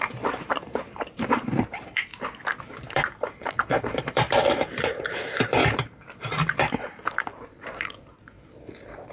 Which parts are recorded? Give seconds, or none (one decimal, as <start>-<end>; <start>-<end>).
2.1-2.6